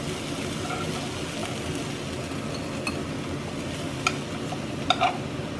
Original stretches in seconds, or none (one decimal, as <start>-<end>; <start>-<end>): 0.0-5.6